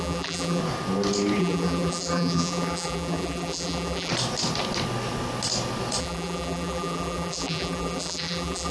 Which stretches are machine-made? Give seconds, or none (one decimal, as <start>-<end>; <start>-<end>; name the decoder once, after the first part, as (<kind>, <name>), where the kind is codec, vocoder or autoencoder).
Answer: 0.0-0.6 (vocoder, BigVGAN v2); 1.4-4.1; 6.0-8.7